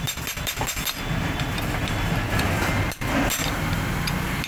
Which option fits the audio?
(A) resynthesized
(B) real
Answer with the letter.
A